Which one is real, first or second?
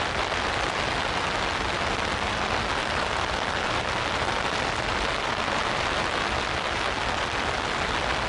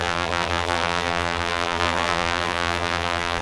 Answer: first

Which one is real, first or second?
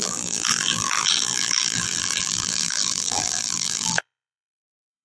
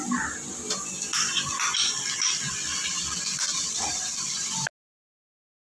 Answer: second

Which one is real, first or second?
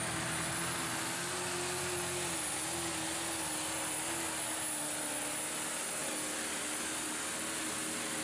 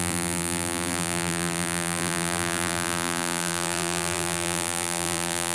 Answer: first